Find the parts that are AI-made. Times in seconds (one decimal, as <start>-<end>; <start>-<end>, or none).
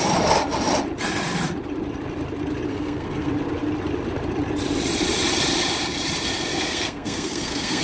2.7-3.3; 6.5-7.8